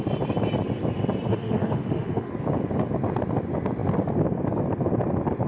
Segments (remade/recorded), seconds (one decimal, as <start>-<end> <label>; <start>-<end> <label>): 0.0-1.3 recorded; 1.3-2.3 remade; 2.3-5.5 recorded